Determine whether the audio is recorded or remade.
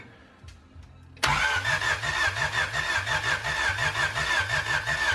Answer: recorded